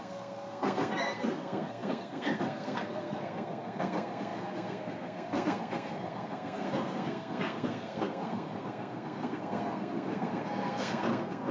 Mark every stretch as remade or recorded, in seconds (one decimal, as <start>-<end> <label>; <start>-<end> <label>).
0.0-11.5 remade